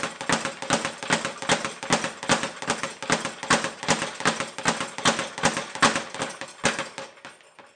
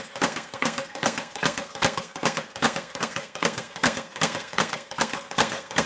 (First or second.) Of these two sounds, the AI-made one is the second